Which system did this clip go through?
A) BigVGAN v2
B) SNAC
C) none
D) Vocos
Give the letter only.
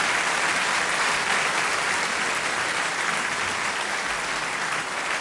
C